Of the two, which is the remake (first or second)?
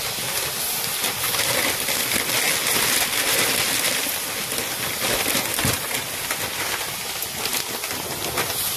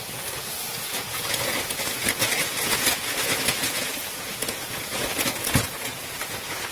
second